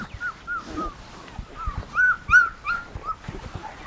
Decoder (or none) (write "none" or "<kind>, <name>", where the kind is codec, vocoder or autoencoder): none